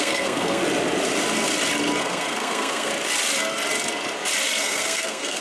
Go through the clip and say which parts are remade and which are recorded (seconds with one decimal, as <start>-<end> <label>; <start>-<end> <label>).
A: 0.0-0.6 remade; 0.6-2.0 recorded; 2.0-2.9 remade; 2.9-4.6 recorded; 4.6-5.4 remade